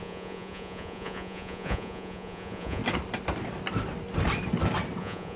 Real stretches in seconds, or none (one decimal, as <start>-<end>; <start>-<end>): 2.8-5.0